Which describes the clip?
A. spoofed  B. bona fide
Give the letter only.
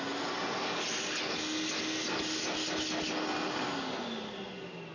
B